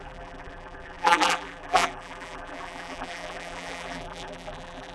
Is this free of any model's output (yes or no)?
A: no